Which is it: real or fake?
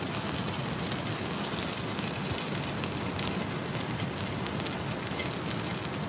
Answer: real